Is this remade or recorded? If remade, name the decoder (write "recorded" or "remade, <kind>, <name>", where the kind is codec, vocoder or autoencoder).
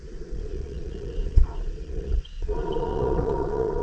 remade, vocoder, Vocos